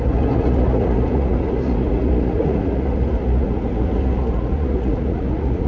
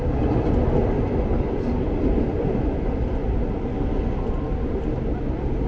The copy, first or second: first